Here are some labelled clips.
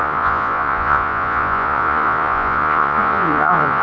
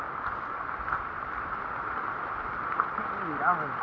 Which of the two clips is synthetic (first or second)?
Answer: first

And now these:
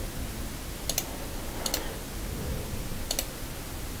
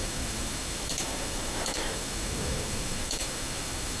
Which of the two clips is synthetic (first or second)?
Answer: second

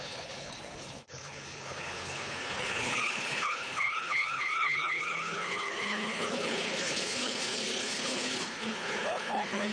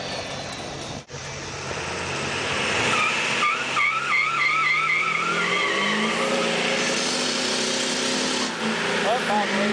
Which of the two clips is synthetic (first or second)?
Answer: first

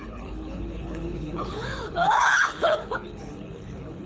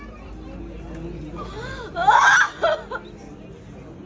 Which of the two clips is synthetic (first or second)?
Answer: first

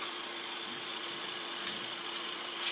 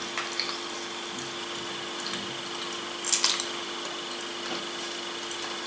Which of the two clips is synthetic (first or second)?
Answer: first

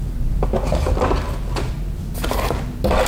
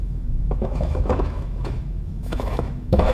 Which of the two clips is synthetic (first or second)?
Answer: second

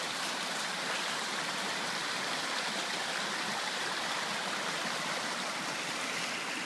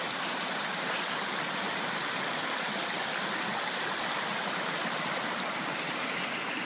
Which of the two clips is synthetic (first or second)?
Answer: first